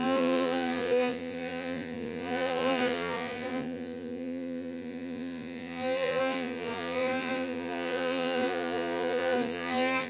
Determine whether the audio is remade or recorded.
remade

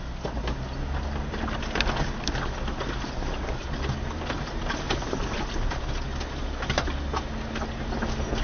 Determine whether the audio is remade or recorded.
recorded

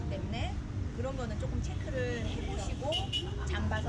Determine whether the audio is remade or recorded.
recorded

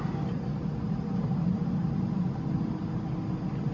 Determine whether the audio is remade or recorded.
recorded